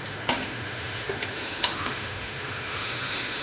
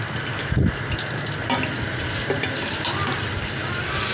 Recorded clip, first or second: second